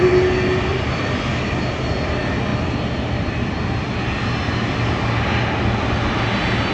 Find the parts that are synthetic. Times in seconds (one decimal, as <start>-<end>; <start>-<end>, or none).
0.7-1.2